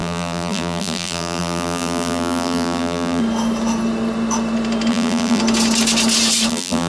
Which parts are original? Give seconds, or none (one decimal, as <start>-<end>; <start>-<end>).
3.2-4.9; 5.4-6.5